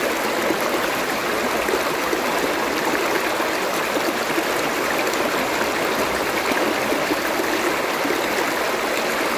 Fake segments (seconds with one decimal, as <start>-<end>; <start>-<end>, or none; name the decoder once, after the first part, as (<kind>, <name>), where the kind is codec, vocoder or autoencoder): none